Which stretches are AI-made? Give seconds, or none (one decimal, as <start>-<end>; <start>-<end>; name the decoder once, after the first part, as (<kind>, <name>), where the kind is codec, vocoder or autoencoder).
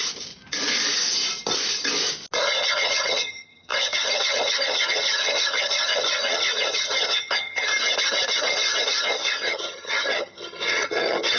2.7-7.7 (vocoder, HiFi-GAN); 8.8-11.4